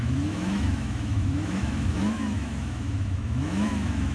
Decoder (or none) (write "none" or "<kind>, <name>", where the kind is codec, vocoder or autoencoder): autoencoder, DAC-VAE